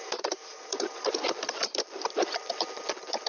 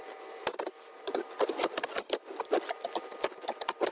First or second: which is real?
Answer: second